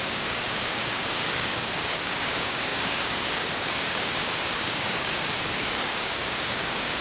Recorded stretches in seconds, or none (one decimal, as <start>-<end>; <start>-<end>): none